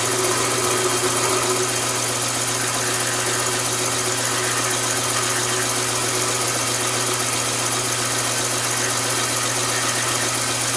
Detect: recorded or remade recorded